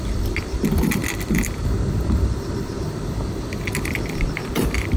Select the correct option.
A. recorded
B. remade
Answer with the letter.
B